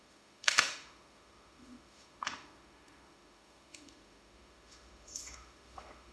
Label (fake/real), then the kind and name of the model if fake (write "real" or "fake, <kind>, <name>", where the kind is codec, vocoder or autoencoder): fake, autoencoder, DAC-VAE